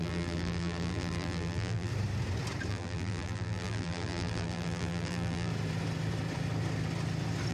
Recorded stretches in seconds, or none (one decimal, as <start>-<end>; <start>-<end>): 1.9-2.7; 5.5-7.5